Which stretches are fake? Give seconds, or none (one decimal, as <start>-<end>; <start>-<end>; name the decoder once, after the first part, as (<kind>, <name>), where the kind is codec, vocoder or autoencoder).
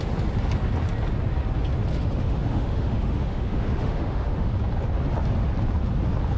1.9-4.5 (autoencoder, DAC-VAE)